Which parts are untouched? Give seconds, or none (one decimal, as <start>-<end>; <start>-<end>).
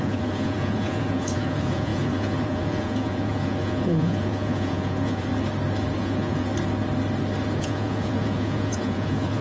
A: 5.3-6.0; 6.5-7.6